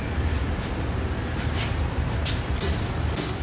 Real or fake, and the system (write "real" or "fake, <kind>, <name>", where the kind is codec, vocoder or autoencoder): fake, vocoder, BigVGAN v2